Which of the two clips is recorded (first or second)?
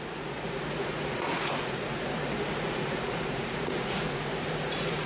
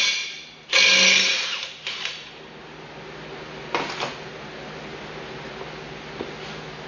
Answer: second